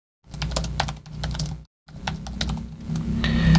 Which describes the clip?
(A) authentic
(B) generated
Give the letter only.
A